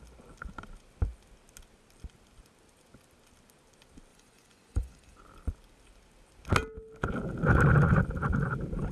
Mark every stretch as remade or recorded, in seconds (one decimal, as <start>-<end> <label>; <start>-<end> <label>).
0.0-4.1 recorded; 4.1-5.2 remade; 5.2-8.9 recorded